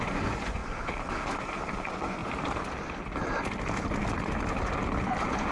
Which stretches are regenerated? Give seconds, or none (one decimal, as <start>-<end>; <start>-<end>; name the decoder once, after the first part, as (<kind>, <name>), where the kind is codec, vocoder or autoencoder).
0.0-0.6 (vocoder, Vocos); 1.8-2.2

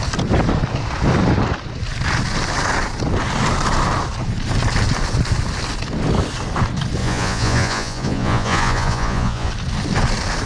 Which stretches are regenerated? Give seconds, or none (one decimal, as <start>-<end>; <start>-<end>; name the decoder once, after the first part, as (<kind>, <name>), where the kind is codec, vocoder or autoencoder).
7.0-9.5 (vocoder, Vocos)

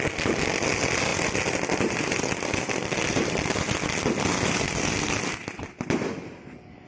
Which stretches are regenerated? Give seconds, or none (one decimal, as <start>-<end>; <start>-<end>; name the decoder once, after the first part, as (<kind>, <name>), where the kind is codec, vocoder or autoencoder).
none

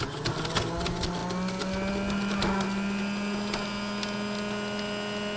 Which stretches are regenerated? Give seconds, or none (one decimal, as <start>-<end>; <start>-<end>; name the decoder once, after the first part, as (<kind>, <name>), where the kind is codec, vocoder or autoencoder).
none

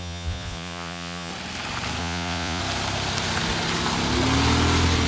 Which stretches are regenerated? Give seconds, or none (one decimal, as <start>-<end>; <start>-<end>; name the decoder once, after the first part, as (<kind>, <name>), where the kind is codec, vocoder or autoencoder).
0.0-1.3 (vocoder, Vocos); 2.0-2.6

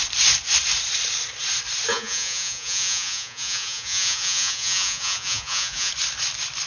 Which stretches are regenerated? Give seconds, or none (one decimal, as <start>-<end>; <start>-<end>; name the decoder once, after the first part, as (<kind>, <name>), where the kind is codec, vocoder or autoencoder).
1.9-5.9 (vocoder, Vocos)